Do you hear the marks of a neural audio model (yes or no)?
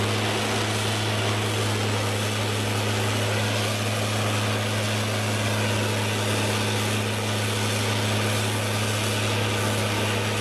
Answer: no